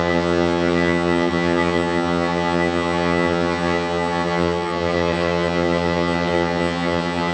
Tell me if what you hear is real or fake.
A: fake